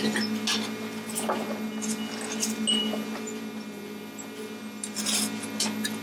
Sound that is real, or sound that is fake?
real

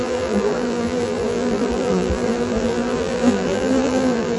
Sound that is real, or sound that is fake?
fake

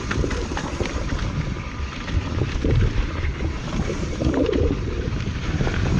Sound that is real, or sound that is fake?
fake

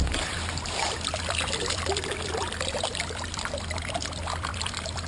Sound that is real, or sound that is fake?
fake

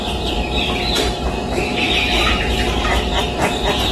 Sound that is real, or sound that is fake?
fake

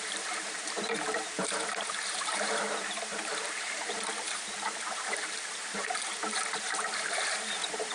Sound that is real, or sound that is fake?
fake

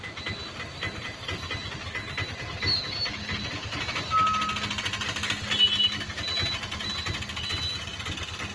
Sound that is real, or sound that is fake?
real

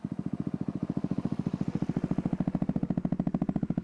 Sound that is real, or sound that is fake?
real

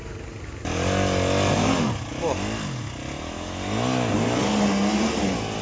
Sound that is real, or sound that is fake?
real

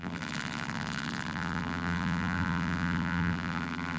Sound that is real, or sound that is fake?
fake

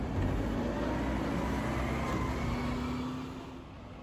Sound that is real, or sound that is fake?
real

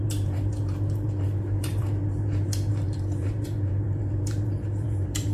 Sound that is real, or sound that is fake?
fake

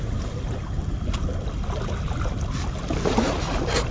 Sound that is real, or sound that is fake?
real